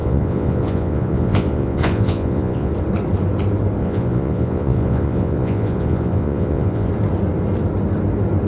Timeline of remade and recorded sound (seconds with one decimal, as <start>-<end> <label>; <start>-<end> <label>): 0.0-2.7 remade; 2.7-3.8 recorded; 3.8-6.9 remade; 6.9-8.5 recorded